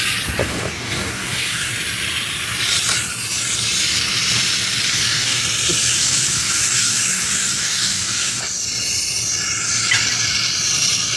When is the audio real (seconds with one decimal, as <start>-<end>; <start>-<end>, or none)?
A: 0.0-0.4; 1.7-4.9; 5.4-5.9; 8.4-11.2